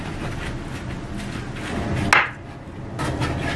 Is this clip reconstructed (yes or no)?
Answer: no